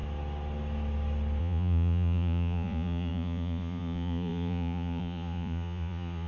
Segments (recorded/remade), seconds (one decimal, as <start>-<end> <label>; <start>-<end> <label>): 0.0-1.4 recorded; 1.4-6.3 remade